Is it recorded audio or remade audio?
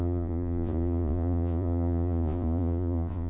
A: remade